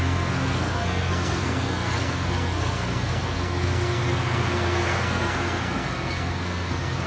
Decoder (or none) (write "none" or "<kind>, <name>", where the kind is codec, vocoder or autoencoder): codec, SNAC